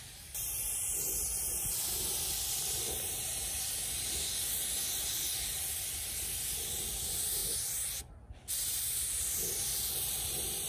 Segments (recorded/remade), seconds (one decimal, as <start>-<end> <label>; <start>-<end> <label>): 0.0-10.7 recorded